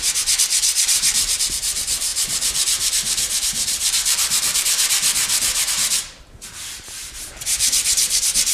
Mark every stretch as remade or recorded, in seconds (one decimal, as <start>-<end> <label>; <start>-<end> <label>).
0.0-8.5 remade